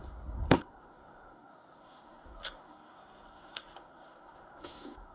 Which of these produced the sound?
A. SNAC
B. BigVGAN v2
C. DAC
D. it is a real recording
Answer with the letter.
A